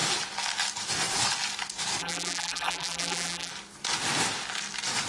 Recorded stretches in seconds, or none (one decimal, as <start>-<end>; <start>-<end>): 0.0-2.0; 3.5-5.1